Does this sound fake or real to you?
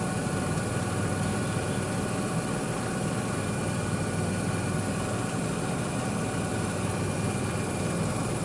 fake